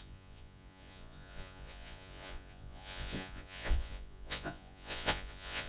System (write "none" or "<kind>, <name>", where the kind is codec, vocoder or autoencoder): vocoder, Vocos